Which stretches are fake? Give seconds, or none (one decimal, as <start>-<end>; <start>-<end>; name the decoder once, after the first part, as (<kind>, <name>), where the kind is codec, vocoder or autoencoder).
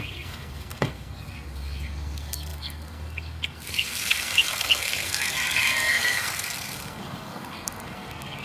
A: 0.0-8.4 (codec, SNAC)